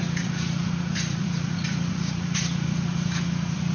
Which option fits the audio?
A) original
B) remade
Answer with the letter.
B